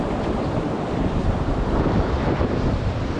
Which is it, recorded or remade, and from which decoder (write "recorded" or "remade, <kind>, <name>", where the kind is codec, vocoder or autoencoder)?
remade, vocoder, BigVGAN v2